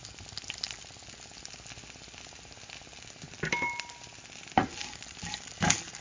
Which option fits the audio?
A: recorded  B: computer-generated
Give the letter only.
A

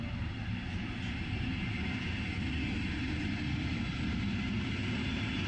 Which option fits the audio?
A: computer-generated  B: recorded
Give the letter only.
B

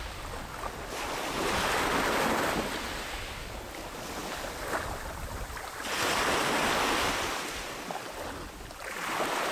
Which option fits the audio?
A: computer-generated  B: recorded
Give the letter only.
B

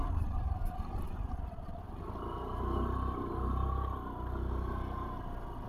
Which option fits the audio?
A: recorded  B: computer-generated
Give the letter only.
A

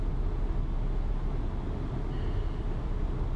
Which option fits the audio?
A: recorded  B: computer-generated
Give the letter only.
A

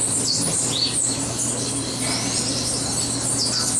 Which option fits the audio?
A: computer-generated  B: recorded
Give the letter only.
B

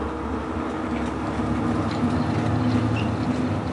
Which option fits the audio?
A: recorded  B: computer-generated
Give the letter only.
A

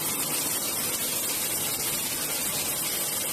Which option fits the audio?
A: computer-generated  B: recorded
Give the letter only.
B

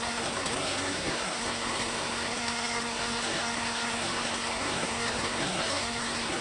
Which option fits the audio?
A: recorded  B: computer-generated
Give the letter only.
B